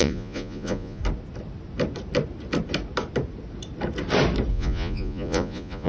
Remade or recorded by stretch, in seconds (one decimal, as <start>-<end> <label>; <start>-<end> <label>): 0.0-1.0 remade; 1.0-4.5 recorded; 4.5-5.9 remade